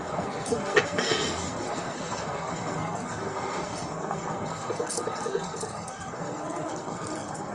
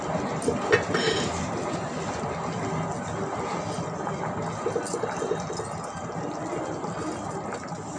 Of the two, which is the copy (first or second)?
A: first